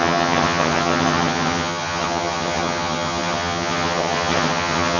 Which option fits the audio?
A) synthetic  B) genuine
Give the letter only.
A